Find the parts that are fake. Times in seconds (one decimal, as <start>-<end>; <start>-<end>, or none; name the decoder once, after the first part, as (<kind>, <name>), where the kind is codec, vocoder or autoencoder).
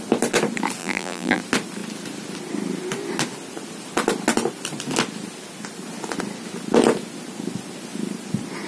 0.8-1.4 (vocoder, BigVGAN v2)